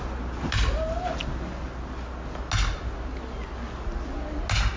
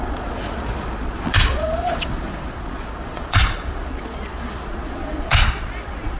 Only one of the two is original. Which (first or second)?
first